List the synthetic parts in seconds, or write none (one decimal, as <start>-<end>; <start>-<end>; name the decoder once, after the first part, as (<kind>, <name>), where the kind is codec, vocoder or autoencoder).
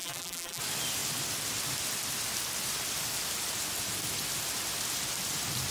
0.0-0.6 (vocoder, BigVGAN v2)